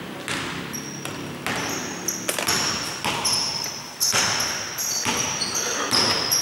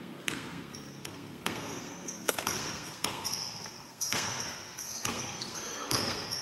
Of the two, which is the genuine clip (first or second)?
first